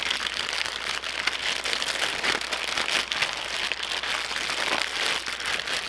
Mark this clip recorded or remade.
recorded